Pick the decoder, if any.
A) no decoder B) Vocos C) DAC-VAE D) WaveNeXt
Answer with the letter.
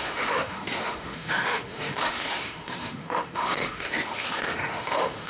C